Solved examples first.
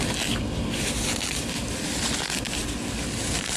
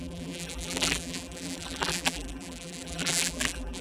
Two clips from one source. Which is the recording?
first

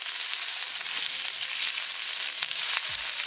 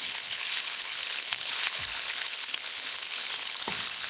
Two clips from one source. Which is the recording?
first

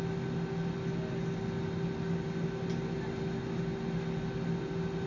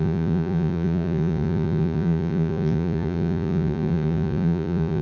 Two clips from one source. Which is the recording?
first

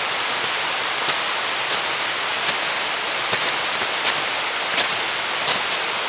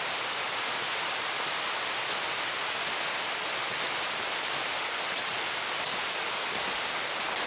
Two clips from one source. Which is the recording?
second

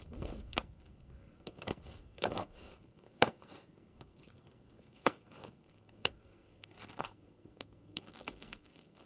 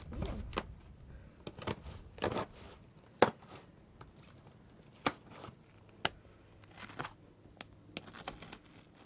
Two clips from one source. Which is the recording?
second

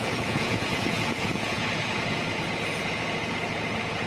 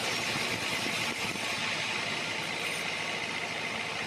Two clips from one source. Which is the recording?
second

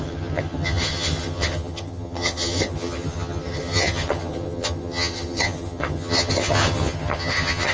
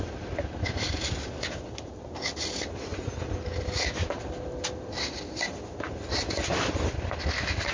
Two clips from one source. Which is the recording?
second